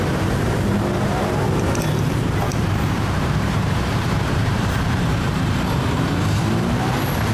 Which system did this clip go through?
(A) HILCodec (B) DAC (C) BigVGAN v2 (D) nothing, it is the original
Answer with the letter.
C